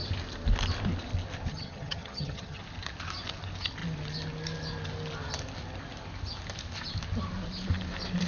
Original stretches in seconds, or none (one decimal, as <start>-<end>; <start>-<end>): 0.0-1.5; 2.6-8.3